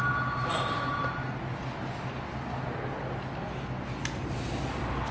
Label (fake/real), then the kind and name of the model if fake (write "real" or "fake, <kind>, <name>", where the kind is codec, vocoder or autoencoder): real